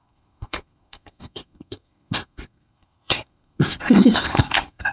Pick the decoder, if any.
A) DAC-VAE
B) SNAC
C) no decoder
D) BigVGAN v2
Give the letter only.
B